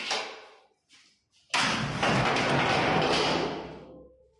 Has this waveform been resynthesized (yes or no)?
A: no